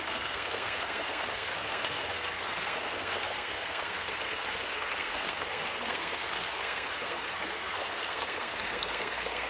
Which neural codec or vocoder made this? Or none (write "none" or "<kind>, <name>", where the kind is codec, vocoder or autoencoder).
codec, SNAC